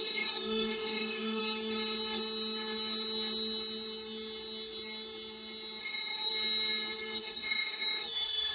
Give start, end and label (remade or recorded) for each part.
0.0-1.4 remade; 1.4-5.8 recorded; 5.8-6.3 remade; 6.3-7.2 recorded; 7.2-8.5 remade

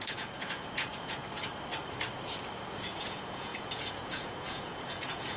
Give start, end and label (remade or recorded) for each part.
0.0-1.2 remade; 1.2-2.8 recorded; 2.8-5.4 remade

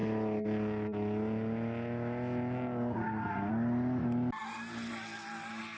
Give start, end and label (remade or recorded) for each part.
0.0-5.8 recorded

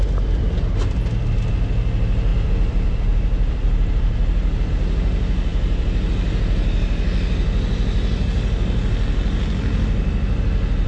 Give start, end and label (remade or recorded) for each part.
0.0-2.3 recorded; 2.3-4.7 remade; 4.7-5.5 recorded; 5.5-6.1 remade; 6.1-10.9 recorded

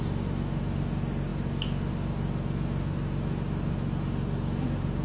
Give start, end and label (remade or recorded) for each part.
0.0-5.0 recorded

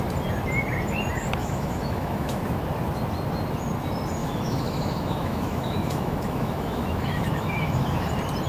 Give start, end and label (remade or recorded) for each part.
0.0-1.4 recorded; 1.4-2.4 remade; 2.4-4.2 recorded; 4.2-8.1 remade; 8.1-8.5 recorded

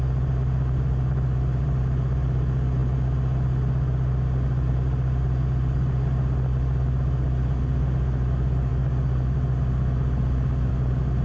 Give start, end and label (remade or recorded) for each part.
0.0-11.2 recorded

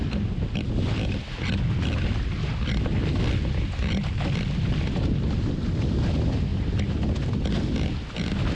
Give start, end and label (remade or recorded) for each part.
0.0-8.5 recorded